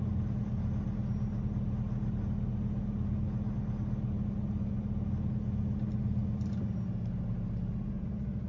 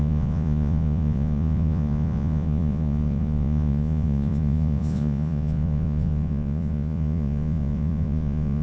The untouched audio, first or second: first